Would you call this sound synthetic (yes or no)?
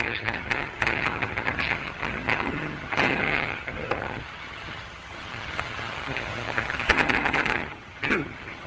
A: yes